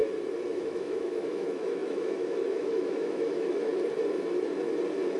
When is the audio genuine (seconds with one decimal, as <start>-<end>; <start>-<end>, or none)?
0.0-0.5; 3.7-5.2